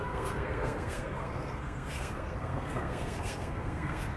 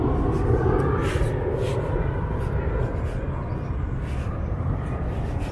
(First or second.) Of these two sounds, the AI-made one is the first